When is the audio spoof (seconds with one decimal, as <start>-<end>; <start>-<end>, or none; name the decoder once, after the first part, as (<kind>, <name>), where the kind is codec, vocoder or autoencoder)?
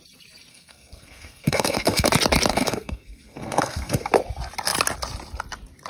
0.5-2.1 (codec, SNAC); 2.5-4.1